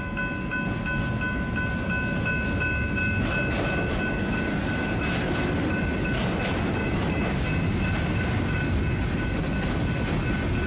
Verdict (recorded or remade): recorded